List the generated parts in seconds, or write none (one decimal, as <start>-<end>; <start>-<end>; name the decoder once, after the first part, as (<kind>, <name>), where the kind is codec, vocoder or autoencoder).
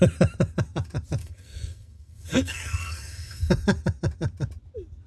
1.2-3.5 (codec, SNAC)